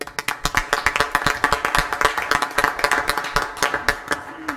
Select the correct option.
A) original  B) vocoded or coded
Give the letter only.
A